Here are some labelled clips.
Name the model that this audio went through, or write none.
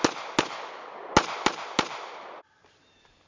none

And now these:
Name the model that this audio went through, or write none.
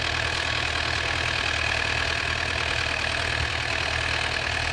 none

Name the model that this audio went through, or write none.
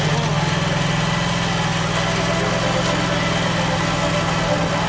none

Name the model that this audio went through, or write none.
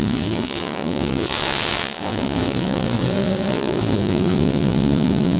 vocoder, WaveNeXt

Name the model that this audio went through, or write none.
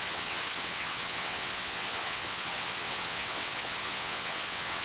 vocoder, WaveNeXt